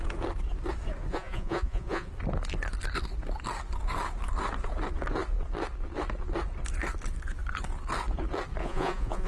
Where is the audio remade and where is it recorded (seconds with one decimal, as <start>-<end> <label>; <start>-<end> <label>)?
0.0-1.1 recorded; 1.1-2.1 remade; 2.1-8.6 recorded; 8.6-9.3 remade